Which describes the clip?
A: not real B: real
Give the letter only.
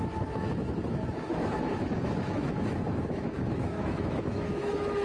A